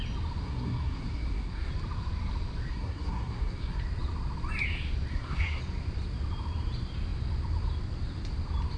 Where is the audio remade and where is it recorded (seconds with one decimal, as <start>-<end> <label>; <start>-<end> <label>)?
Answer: 0.0-0.4 recorded; 0.4-1.7 remade; 1.7-2.7 recorded; 2.7-3.8 remade; 3.8-5.1 recorded; 5.1-5.6 remade; 5.6-8.8 recorded